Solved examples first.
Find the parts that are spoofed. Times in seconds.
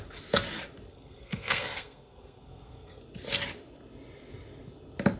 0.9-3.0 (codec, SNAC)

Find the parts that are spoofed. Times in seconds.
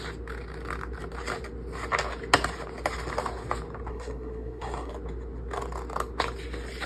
3.9-4.9 (codec, SNAC)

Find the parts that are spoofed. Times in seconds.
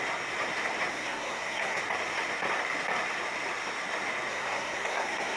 0.9-1.8 (codec, SNAC); 4.3-5.4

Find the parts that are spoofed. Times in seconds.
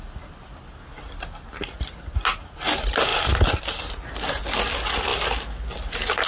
none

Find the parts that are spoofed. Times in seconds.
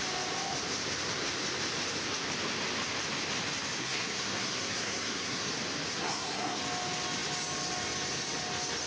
3.8-5.5 (codec, SNAC); 5.9-6.6